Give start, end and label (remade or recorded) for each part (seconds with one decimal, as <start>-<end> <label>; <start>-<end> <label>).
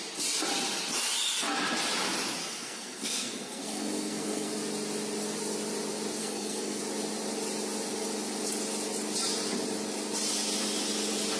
0.0-2.4 recorded; 2.4-4.5 remade; 4.5-6.2 recorded; 6.2-6.8 remade; 6.8-11.4 recorded